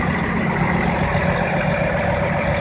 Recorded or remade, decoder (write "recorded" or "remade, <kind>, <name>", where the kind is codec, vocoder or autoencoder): recorded